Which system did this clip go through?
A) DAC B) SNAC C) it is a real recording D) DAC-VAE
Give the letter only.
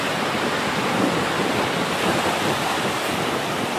C